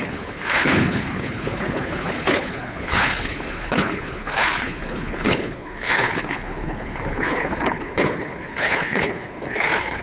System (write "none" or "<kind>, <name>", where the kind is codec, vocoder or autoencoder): codec, HILCodec